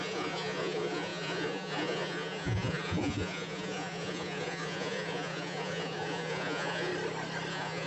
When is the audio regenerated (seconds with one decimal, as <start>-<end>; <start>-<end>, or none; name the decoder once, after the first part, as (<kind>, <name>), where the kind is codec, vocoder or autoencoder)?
0.0-6.9 (vocoder, Vocos); 7.5-7.9